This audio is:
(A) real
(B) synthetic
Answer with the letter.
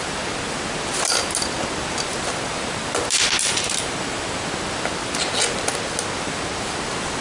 A